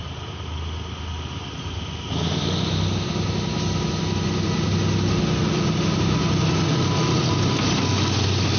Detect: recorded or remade recorded